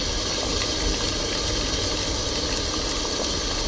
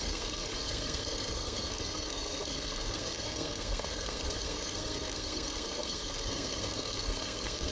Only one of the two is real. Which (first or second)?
first